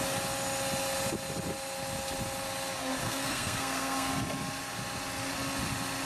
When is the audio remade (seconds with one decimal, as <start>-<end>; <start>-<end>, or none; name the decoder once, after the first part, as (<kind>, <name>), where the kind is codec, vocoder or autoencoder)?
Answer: 3.0-4.1 (codec, SNAC)